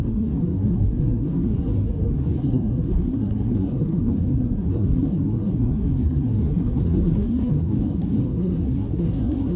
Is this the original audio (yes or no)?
no